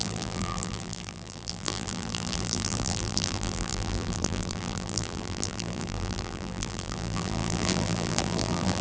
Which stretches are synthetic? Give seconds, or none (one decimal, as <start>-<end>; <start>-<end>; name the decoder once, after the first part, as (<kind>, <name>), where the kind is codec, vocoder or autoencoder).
0.0-8.8 (vocoder, BigVGAN v2)

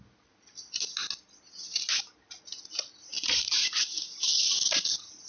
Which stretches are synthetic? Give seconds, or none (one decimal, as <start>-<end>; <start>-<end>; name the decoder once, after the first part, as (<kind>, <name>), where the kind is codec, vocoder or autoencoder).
3.1-4.0 (vocoder, BigVGAN v2)

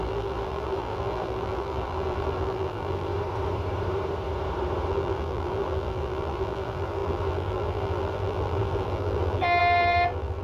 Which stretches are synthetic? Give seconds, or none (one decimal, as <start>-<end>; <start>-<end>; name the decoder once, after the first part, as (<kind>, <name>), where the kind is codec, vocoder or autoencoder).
0.0-3.1 (vocoder, BigVGAN v2); 4.9-10.4

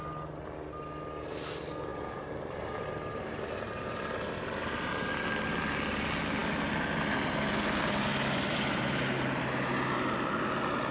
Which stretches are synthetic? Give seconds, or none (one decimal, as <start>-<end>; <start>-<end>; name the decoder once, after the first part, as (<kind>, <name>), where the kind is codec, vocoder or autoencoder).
1.9-4.9 (vocoder, BigVGAN v2)